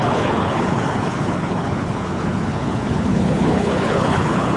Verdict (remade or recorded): remade